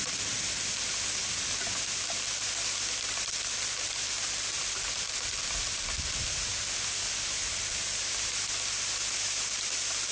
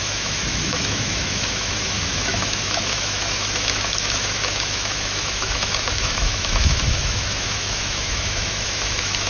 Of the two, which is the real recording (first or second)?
first